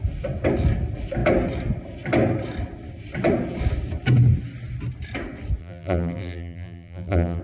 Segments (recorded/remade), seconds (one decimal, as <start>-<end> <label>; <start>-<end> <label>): 0.0-5.6 recorded; 5.6-7.4 remade